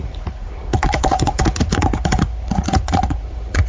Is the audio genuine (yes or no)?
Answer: no